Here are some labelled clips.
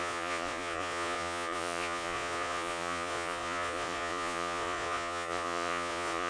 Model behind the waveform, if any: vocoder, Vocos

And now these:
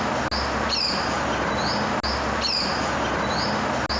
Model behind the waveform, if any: none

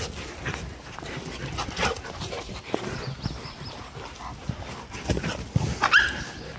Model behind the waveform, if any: none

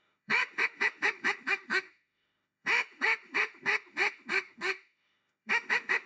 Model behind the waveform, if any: autoencoder, DAC-VAE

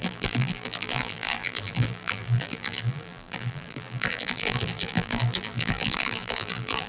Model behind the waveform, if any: vocoder, BigVGAN v2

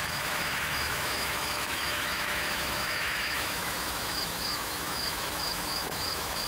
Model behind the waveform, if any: autoencoder, DAC-VAE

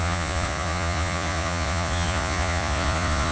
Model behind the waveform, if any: vocoder, Vocos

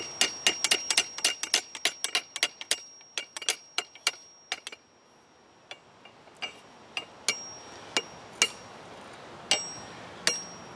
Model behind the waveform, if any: none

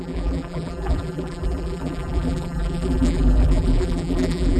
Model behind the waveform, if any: vocoder, BigVGAN v2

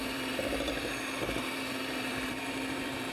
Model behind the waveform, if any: vocoder, BigVGAN v2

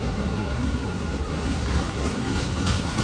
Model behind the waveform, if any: codec, SNAC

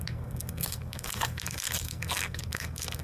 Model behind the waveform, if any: codec, SNAC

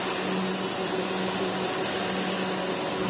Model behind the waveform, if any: none